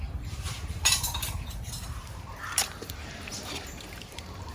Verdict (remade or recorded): remade